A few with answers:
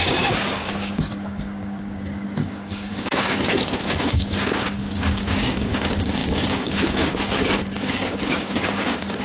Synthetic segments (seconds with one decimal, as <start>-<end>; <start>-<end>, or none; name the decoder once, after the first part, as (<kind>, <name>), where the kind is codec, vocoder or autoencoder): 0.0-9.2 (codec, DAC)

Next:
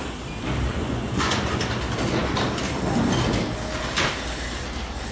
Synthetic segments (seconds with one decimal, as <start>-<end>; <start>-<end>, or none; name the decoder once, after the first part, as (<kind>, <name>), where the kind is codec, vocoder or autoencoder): 0.7-1.6 (vocoder, Vocos)

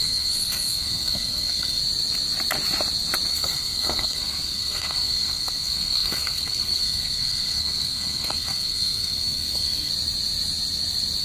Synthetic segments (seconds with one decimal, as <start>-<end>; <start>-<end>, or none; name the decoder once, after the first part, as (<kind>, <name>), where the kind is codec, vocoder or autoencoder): 0.0-1.8 (codec, SNAC); 3.3-9.9

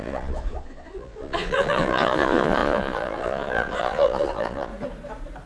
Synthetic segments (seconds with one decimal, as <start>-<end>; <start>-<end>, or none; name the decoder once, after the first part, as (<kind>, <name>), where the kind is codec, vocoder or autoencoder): 0.0-4.7 (vocoder, Vocos)

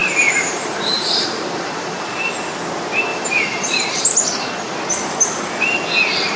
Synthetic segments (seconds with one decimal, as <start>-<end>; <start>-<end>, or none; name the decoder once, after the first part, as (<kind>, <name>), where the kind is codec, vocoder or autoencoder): 0.0-2.1 (vocoder, BigVGAN v2); 3.1-4.0